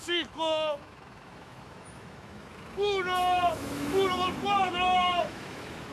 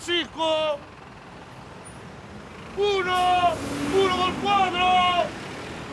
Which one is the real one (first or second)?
second